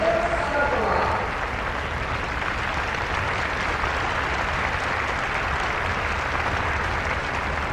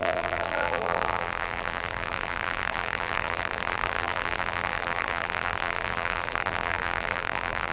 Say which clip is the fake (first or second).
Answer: second